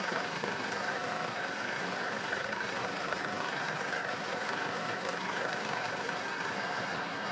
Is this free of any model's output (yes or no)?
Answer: no